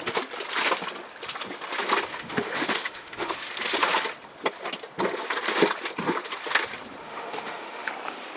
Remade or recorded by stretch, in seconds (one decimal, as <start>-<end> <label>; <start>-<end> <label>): 0.0-2.1 recorded; 2.1-3.5 remade; 3.5-7.0 recorded; 7.0-7.9 remade; 7.9-8.4 recorded